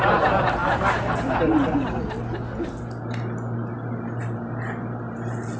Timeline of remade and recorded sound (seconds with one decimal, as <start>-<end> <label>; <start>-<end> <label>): 0.0-5.6 recorded